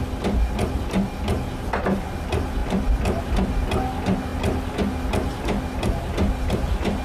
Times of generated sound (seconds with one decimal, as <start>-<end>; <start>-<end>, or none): 2.6-3.3